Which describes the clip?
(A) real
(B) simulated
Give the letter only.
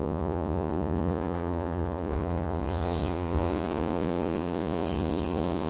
B